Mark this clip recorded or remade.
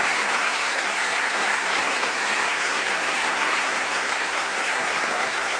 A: remade